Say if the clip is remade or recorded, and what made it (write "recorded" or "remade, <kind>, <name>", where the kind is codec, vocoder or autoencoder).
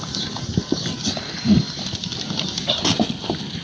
recorded